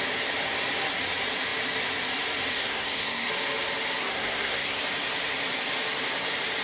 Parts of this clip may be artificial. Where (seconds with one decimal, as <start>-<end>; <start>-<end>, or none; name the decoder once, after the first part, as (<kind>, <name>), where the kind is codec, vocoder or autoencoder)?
2.5-3.3 (codec, SNAC); 4.0-4.8